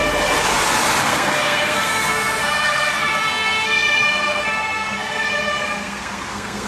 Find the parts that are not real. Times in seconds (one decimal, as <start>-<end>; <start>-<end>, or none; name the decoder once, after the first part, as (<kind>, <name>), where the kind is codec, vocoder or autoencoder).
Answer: 1.0-6.7 (codec, SNAC)